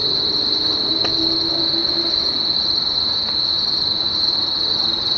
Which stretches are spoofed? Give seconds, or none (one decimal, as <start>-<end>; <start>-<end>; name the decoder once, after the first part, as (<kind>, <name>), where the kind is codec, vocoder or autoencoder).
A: none